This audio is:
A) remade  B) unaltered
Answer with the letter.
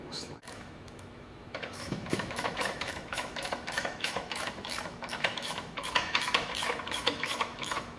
A